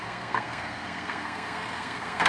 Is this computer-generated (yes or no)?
yes